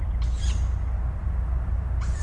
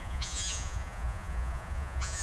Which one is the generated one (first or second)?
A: second